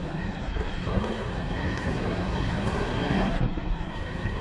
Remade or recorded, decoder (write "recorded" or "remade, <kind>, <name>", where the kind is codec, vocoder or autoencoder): remade, codec, SNAC